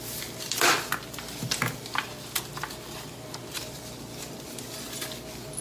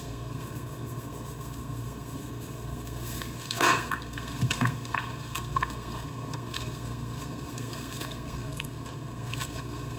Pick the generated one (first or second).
second